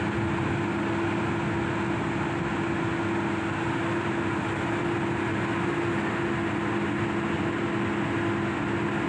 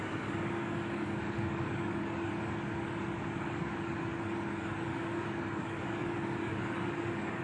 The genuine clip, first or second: first